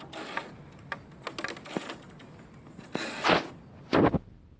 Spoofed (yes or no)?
no